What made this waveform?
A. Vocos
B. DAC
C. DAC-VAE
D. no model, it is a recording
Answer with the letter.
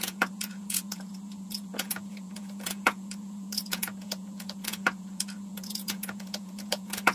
A